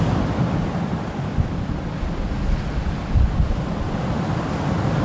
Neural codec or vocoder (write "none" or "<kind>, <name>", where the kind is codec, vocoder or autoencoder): none